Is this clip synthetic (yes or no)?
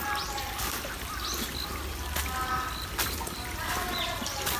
no